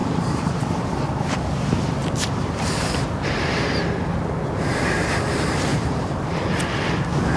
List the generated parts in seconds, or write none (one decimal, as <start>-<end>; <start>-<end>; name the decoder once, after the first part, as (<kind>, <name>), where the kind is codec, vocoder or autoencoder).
0.0-0.8 (vocoder, BigVGAN v2); 2.0-4.1; 5.7-6.4